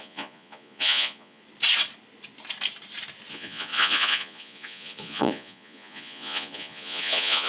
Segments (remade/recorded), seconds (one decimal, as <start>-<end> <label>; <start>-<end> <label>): 0.0-1.4 remade; 1.4-3.3 recorded; 3.3-7.5 remade